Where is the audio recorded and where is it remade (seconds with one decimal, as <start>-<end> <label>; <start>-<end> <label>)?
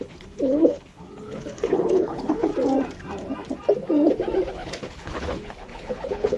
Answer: 0.0-2.5 remade; 2.5-4.5 recorded; 4.5-6.4 remade